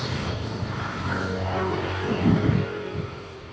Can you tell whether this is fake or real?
fake